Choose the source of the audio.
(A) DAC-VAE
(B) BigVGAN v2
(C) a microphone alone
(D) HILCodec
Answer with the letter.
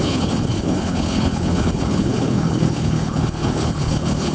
D